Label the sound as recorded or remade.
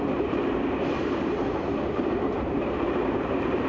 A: remade